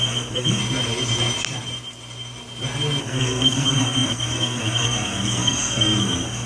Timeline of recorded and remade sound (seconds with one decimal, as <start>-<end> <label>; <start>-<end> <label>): 0.0-0.6 remade; 0.6-3.0 recorded; 3.0-6.5 remade